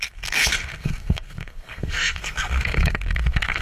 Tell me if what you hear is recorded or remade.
remade